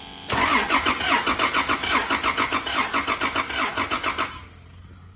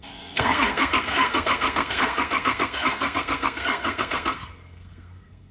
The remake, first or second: second